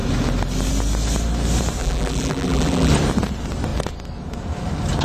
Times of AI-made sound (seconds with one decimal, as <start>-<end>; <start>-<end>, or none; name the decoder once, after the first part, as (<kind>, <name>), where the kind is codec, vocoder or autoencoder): 1.8-2.9 (vocoder, BigVGAN v2)